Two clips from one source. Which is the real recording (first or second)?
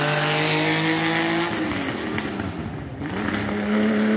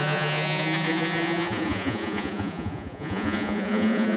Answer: first